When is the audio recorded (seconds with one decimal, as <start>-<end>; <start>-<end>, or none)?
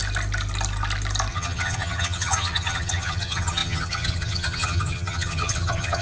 0.0-1.3